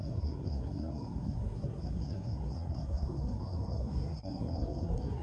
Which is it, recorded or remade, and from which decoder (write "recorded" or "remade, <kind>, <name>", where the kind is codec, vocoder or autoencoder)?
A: remade, codec, SNAC